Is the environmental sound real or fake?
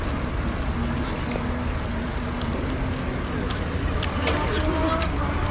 real